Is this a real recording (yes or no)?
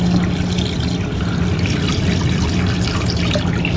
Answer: yes